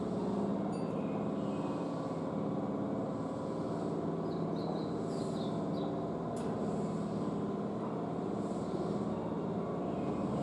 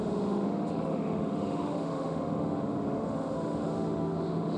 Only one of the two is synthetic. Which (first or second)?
second